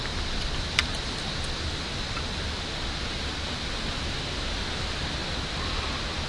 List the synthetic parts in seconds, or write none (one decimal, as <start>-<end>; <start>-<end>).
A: none